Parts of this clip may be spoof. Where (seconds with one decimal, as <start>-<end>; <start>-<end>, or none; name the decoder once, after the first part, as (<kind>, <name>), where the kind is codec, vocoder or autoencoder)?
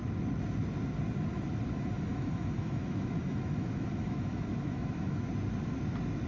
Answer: 2.1-5.3 (autoencoder, DAC-VAE)